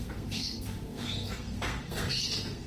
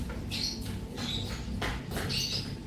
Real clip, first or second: second